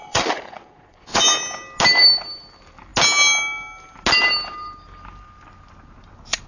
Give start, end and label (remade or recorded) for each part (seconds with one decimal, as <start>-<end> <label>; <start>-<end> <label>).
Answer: 0.0-1.2 remade; 1.2-6.5 recorded